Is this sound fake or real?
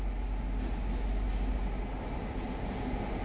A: real